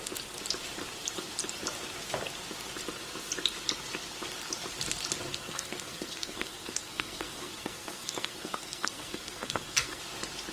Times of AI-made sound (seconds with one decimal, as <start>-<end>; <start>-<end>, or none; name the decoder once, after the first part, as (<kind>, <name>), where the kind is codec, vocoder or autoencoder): 5.3-10.0 (codec, SNAC)